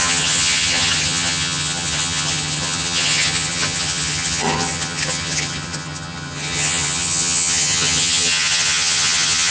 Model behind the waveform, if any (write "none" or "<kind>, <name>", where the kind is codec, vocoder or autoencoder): vocoder, HiFi-GAN